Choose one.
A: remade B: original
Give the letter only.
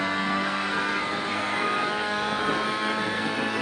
A